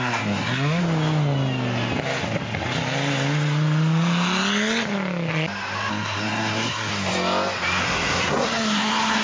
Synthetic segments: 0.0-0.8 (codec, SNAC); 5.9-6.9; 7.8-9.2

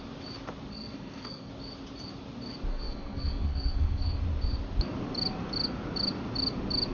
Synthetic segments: 0.7-1.5 (codec, SNAC); 2.7-4.2

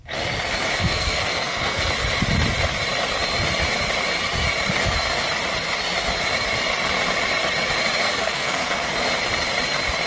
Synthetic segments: 0.7-1.9 (codec, SNAC); 8.0-8.9

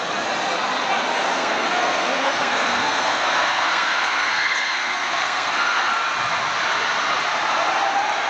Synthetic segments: 1.3-5.9 (codec, SNAC)

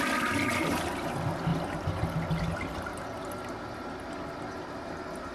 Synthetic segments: none

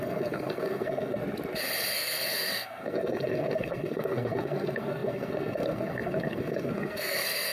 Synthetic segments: 0.0-1.2 (codec, SNAC); 1.9-7.5

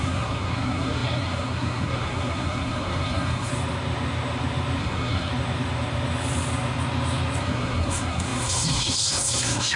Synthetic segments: 0.0-3.5 (codec, SNAC); 4.8-5.3; 7.4-9.8

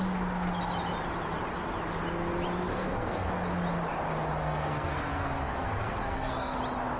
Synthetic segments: 2.7-3.3 (codec, SNAC); 4.4-6.6